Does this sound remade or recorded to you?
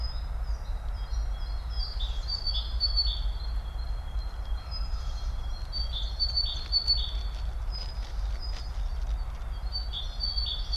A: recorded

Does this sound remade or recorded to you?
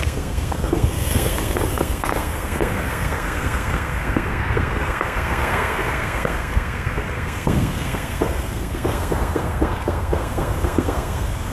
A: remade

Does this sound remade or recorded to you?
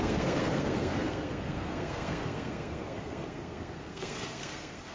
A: remade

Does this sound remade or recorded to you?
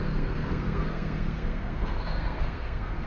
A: remade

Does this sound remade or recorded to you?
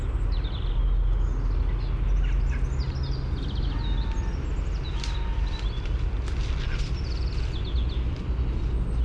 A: recorded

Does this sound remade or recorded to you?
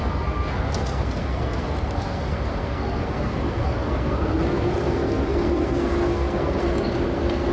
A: remade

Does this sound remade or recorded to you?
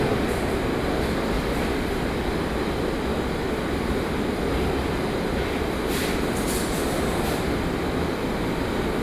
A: recorded